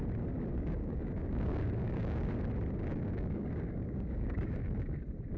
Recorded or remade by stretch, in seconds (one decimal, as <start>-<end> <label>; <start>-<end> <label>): 0.0-0.5 recorded; 0.5-2.3 remade; 2.3-2.9 recorded; 2.9-5.0 remade; 5.0-5.4 recorded